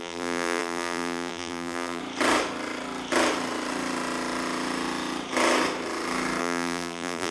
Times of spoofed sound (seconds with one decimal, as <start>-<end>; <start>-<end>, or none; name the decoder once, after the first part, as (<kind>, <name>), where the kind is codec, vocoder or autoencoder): 0.0-2.0 (vocoder, BigVGAN v2); 6.4-7.3